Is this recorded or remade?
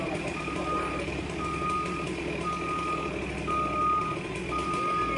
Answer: recorded